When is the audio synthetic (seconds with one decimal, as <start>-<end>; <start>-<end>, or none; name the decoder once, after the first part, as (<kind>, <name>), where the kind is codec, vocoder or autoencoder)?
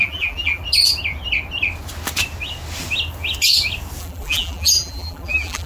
0.0-0.6 (vocoder, BigVGAN v2); 4.0-5.7